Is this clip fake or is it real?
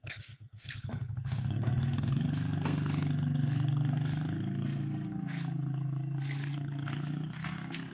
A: fake